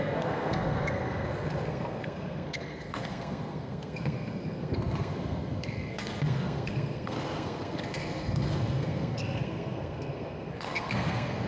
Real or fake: fake